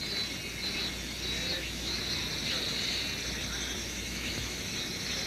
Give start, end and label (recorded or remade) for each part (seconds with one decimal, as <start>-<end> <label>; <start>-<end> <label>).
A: 0.0-1.5 recorded; 1.5-2.0 remade; 2.0-3.8 recorded; 3.8-4.6 remade; 4.6-5.3 recorded